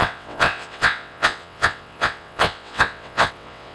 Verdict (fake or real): fake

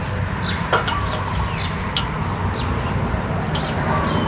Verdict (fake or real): real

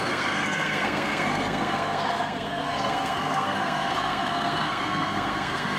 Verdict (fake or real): fake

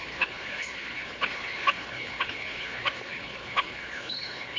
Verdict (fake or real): fake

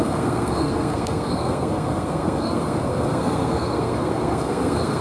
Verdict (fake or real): fake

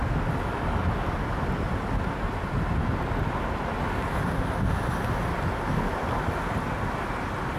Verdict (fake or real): real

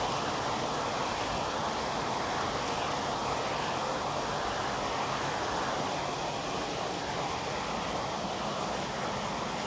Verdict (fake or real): real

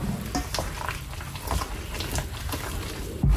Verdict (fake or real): real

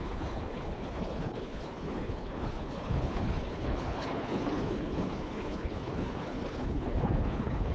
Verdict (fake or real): fake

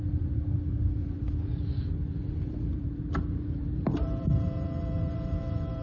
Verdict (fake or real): fake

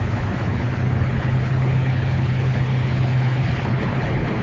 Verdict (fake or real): fake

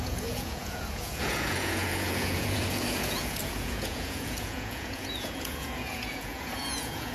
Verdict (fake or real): fake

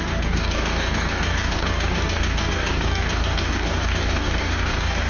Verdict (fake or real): fake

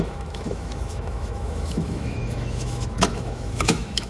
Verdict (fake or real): fake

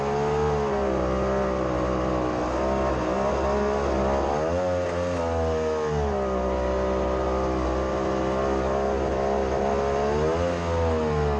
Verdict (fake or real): real